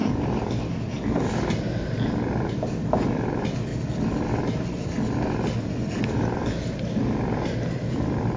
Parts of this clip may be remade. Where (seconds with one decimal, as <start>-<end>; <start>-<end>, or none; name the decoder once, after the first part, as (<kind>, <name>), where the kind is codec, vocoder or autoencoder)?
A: none